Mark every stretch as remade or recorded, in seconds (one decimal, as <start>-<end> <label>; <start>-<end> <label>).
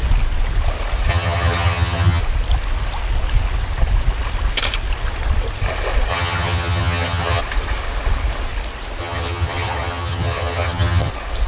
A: 0.0-1.1 recorded; 1.1-2.2 remade; 2.2-6.1 recorded; 6.1-7.4 remade; 7.4-9.0 recorded; 9.0-11.1 remade; 11.1-11.5 recorded